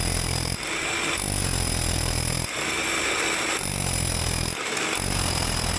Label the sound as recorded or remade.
recorded